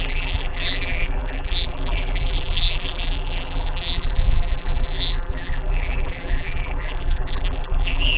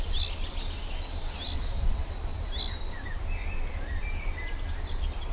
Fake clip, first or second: first